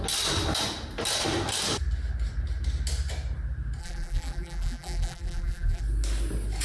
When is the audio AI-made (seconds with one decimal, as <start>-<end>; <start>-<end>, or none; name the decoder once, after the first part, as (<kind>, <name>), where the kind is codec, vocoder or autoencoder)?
3.8-5.8 (vocoder, BigVGAN v2)